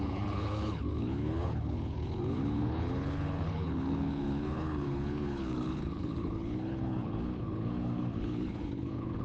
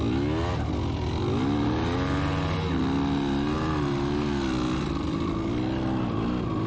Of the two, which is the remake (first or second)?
first